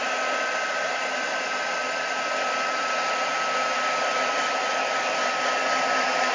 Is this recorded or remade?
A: remade